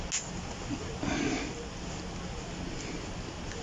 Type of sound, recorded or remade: recorded